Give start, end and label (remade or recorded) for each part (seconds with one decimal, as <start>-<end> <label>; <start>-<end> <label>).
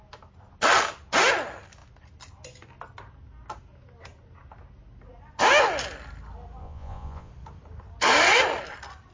0.0-6.6 recorded; 6.6-7.3 remade; 7.3-9.1 recorded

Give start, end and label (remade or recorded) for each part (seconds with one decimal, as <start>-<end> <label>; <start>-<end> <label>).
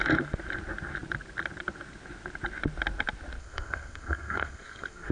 0.0-3.4 recorded; 3.4-5.1 remade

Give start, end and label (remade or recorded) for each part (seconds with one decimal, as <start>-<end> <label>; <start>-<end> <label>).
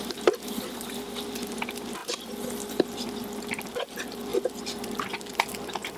0.0-6.0 recorded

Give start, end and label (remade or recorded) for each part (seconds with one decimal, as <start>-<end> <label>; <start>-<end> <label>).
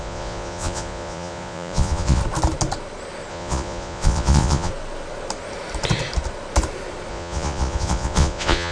0.0-2.2 remade; 2.2-3.3 recorded; 3.3-4.7 remade; 4.7-7.1 recorded; 7.1-8.7 remade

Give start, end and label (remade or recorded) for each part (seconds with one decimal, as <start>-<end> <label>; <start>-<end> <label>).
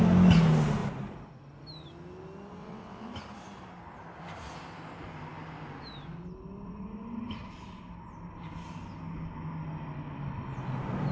0.0-2.6 recorded; 2.6-3.1 remade; 3.1-11.1 recorded